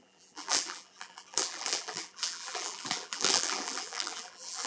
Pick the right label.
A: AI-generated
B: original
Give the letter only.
A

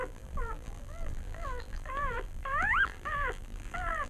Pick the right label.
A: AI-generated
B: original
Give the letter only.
A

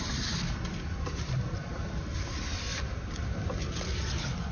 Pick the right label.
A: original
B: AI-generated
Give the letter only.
A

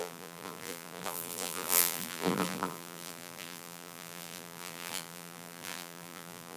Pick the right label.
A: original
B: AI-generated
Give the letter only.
B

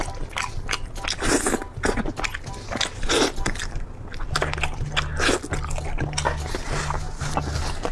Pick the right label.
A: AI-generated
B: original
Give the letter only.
B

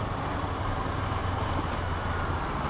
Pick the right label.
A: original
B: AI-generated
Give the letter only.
B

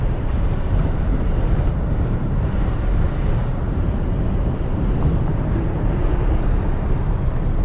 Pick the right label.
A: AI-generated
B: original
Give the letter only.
A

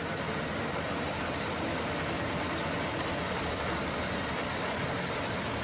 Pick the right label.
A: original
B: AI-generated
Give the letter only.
A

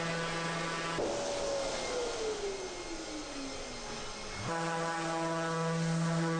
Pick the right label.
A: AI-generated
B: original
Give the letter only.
B